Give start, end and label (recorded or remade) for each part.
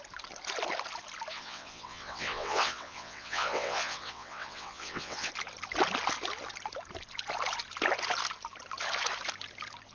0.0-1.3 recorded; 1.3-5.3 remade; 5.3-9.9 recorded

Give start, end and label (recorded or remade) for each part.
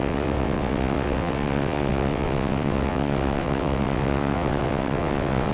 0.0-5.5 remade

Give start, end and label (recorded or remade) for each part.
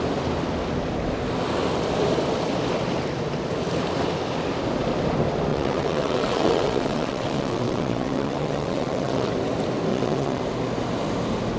0.0-5.5 recorded; 5.5-9.3 remade; 9.3-9.9 recorded; 9.9-10.4 remade; 10.4-11.6 recorded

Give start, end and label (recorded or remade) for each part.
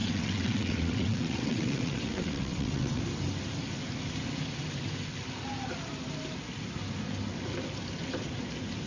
0.0-3.0 remade; 3.0-8.9 recorded